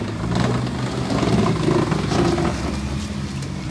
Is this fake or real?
real